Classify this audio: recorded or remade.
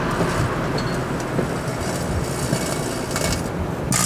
recorded